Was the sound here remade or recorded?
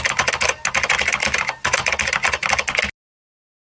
recorded